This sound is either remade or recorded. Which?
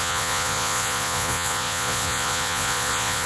remade